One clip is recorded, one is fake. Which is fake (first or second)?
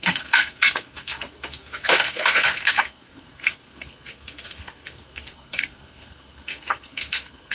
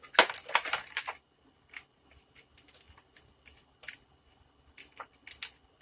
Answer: first